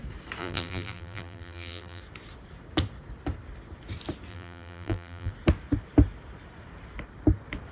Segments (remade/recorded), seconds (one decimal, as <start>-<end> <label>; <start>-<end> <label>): 0.0-0.4 recorded; 0.4-2.0 remade; 2.0-4.3 recorded; 4.3-5.3 remade; 5.3-7.7 recorded